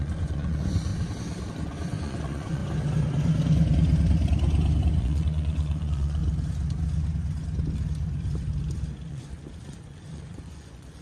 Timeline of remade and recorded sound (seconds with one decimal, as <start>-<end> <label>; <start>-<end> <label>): 0.0-0.9 remade; 0.9-1.5 recorded; 1.5-2.6 remade; 2.6-5.0 recorded; 5.0-6.2 remade; 6.2-9.1 recorded; 9.1-11.0 remade